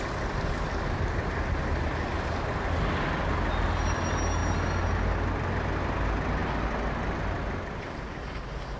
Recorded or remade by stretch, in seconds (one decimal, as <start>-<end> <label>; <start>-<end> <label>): 0.0-8.8 recorded